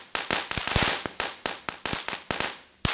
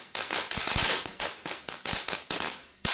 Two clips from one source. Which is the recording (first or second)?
first